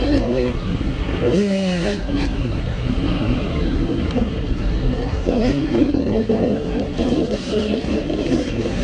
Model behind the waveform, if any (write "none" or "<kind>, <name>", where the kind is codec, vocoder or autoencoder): codec, SNAC